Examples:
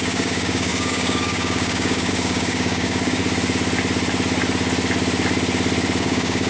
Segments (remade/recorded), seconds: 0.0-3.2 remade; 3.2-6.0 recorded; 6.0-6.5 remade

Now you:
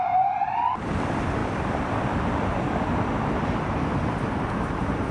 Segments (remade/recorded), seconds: 0.0-1.4 recorded; 1.4-3.4 remade; 3.4-5.1 recorded